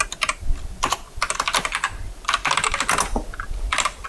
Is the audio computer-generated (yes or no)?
yes